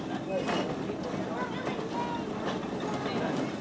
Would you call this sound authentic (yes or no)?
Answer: yes